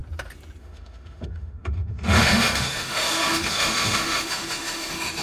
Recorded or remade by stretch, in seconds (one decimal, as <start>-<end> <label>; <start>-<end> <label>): 0.0-0.6 recorded; 0.6-5.2 remade